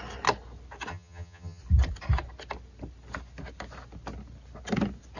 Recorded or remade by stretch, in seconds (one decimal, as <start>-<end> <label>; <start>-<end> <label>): 0.0-0.9 recorded; 0.9-1.6 remade; 1.6-5.2 recorded